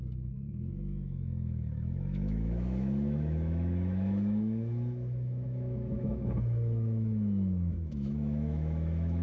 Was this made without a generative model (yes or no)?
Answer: no